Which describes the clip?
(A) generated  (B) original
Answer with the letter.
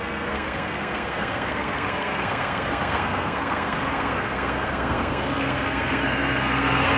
A